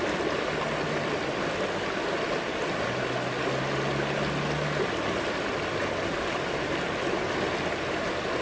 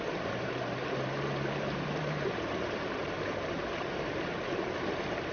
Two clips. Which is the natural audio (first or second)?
first